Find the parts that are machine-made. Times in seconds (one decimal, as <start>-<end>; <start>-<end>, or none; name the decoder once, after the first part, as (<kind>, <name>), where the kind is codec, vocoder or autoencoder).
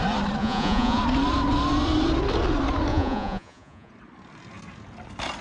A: 0.4-1.0 (vocoder, Vocos); 2.9-3.9